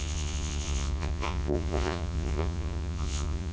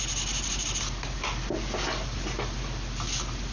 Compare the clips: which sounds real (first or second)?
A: second